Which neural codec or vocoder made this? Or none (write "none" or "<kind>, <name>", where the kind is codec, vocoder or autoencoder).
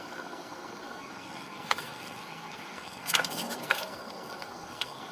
codec, SNAC